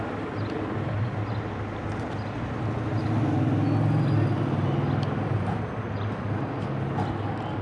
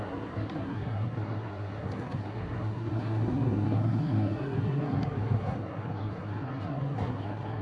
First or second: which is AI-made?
second